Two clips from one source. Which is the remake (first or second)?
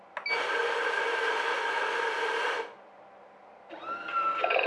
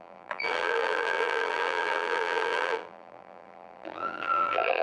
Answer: second